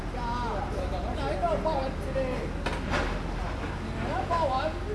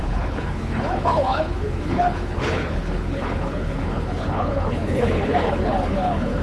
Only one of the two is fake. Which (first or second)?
second